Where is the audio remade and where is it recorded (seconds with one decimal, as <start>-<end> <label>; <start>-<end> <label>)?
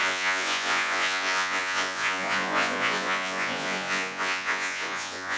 0.0-5.4 remade